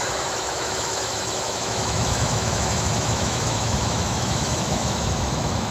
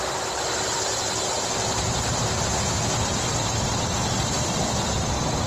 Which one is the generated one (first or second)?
first